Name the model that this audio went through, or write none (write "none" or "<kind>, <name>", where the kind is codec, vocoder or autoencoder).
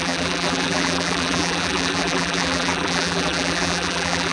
vocoder, BigVGAN v2